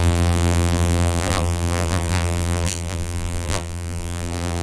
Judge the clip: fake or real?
fake